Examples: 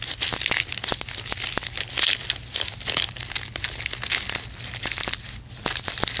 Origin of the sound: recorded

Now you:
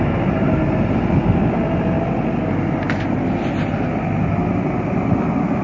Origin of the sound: recorded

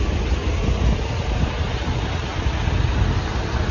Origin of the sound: recorded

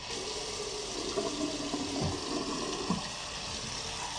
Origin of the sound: recorded